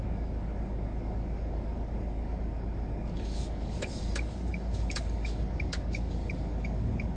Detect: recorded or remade remade